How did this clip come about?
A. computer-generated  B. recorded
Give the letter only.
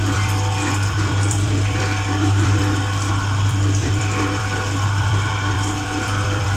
A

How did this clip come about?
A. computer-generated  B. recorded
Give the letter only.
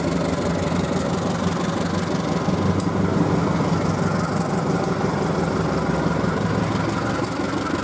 B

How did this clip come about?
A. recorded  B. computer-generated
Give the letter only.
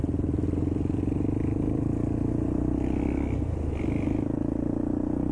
A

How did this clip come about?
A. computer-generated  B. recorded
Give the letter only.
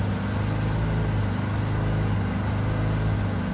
B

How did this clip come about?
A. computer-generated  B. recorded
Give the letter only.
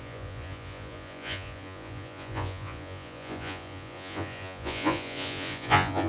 A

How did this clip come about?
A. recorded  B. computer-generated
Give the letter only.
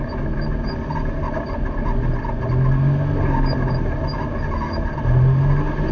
A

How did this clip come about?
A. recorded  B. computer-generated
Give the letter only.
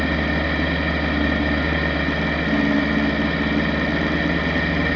A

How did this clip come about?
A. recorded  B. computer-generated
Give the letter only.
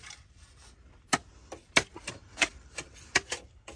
B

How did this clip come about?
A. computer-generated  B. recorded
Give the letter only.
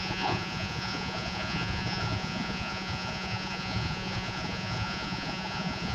A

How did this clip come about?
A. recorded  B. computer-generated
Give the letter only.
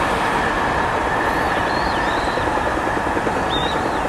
A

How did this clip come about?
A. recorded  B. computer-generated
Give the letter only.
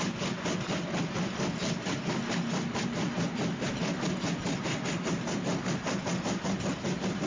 A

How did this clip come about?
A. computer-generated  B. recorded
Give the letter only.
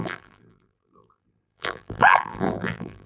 A